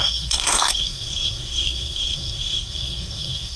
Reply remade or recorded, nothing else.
remade